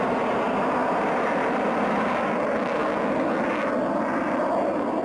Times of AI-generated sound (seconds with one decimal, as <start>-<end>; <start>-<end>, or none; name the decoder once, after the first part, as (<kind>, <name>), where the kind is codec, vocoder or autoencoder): none

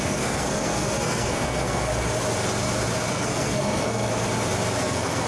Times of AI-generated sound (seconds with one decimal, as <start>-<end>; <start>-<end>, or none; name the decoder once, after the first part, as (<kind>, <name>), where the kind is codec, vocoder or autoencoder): 0.0-1.9 (codec, SNAC); 3.1-4.1; 4.8-5.3

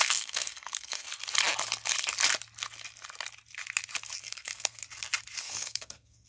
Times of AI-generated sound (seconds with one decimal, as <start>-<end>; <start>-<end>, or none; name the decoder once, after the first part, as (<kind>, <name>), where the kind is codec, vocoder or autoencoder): 0.0-1.1 (codec, SNAC); 4.2-4.8; 5.4-6.3

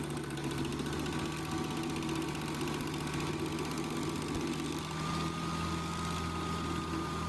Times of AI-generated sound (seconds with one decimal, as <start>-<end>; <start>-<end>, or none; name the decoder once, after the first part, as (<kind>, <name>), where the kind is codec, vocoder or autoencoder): none

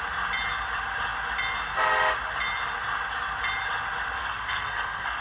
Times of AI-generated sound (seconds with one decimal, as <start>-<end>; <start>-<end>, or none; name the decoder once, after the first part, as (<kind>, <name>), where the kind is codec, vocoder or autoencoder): 4.2-5.2 (codec, SNAC)